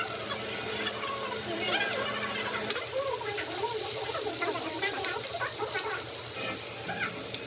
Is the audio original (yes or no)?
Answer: yes